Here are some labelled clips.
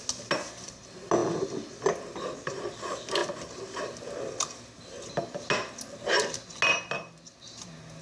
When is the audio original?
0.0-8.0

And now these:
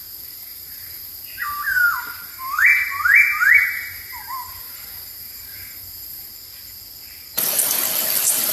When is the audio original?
6.3-8.5

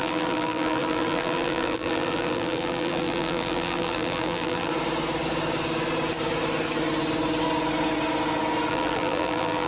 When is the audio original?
4.7-8.7

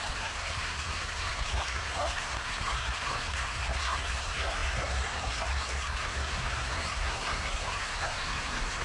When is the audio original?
none

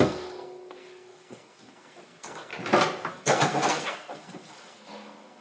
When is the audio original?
2.5-3.1

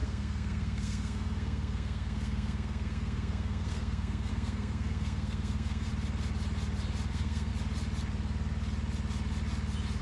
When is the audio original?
5.9-7.1; 7.5-10.0

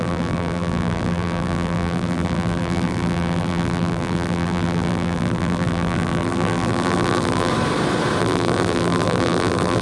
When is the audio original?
7.5-8.2